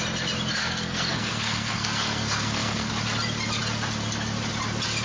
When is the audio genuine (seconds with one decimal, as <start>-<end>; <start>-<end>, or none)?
0.0-0.6; 2.9-5.0